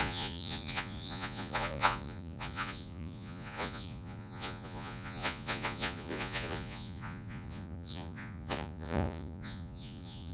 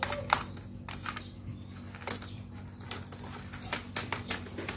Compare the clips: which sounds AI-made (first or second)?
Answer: first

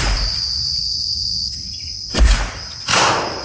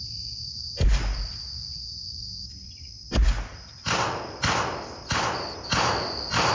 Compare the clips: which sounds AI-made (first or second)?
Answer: first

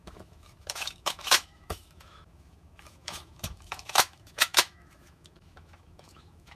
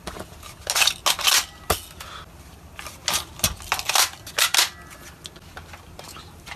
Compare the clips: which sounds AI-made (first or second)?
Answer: first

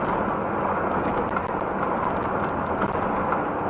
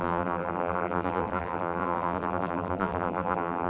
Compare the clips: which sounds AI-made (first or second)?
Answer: second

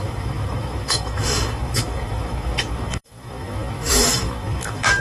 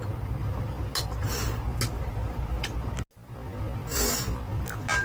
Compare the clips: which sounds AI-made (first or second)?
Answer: first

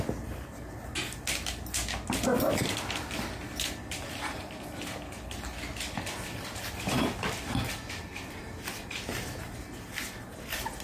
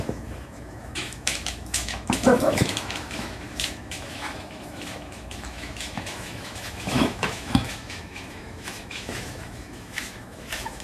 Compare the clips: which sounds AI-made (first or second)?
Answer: second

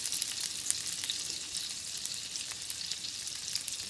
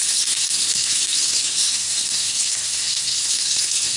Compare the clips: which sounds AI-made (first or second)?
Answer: second